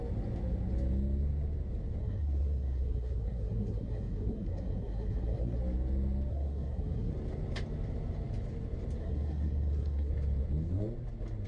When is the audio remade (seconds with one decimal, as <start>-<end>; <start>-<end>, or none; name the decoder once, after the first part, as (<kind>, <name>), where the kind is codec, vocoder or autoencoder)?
2.0-5.6 (codec, SNAC); 6.3-7.1; 9.0-10.1

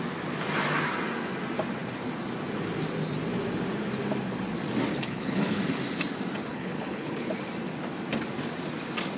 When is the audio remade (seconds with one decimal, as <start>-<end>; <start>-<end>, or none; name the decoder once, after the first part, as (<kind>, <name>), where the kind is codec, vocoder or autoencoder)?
4.9-5.6 (codec, HILCodec); 6.5-7.3